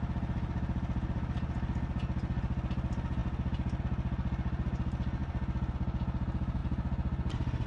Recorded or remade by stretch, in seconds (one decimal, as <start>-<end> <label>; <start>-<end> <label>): 0.0-6.6 recorded; 6.6-7.7 remade